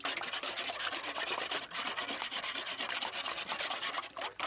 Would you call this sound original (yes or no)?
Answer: yes